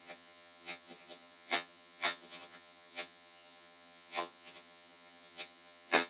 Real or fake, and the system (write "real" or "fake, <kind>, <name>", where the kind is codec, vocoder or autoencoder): fake, vocoder, HiFi-GAN